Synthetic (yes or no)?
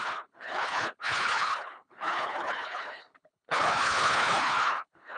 yes